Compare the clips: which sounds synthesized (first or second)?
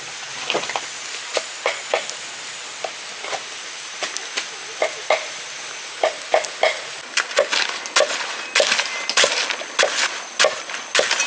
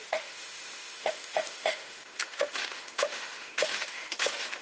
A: second